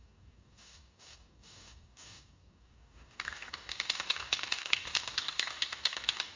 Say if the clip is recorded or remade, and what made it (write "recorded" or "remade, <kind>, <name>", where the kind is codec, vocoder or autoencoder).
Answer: remade, codec, DAC